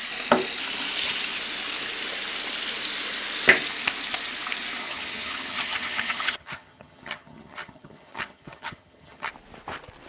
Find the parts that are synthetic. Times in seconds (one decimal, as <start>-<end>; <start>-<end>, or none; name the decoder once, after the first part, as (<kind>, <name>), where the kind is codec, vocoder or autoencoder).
4.8-9.3 (vocoder, HiFi-GAN)